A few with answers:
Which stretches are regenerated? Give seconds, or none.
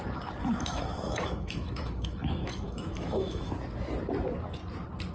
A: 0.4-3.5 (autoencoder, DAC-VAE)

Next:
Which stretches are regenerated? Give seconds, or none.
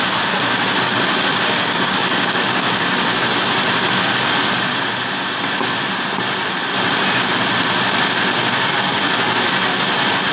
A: 1.6-3.0 (codec, DAC)